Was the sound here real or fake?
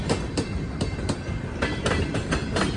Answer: fake